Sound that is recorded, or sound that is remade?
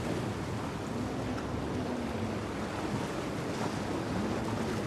recorded